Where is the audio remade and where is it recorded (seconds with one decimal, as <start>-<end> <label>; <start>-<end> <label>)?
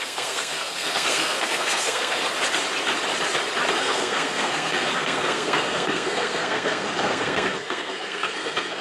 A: 0.0-2.2 remade; 2.2-3.8 recorded; 3.8-8.8 remade